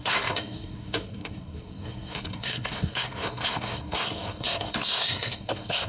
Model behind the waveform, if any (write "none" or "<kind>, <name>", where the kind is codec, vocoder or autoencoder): codec, SNAC